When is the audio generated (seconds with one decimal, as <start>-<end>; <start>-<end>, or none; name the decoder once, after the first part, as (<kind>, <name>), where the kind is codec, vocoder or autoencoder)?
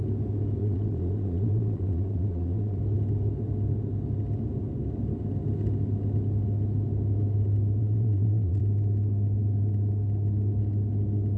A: 0.6-2.8 (vocoder, Vocos); 7.8-8.6